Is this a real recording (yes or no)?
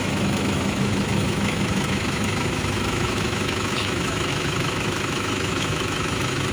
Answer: no